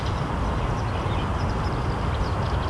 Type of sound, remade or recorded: recorded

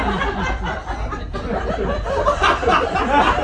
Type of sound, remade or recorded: recorded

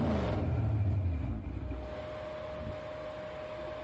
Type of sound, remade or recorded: recorded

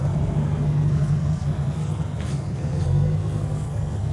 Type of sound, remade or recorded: remade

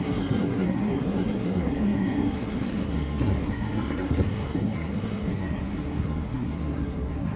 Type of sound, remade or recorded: remade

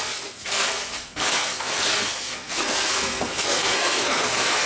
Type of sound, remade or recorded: remade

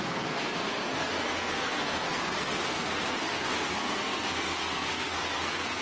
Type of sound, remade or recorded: remade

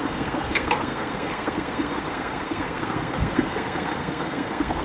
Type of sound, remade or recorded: remade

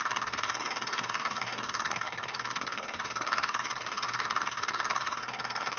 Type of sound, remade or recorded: remade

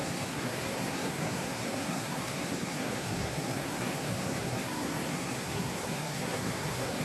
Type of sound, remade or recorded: remade